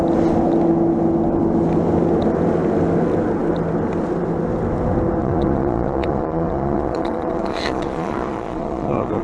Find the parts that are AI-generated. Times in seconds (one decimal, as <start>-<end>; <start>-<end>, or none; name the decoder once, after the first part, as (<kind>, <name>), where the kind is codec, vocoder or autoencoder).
5.2-9.2 (vocoder, Vocos)